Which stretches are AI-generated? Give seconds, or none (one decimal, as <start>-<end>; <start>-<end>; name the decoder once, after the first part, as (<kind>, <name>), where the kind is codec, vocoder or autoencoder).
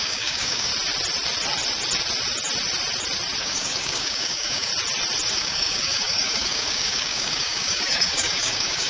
0.0-0.7 (codec, DAC); 3.4-4.7; 5.3-8.9